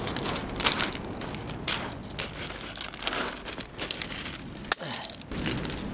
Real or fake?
real